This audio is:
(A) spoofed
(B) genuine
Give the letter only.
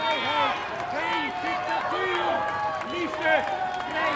B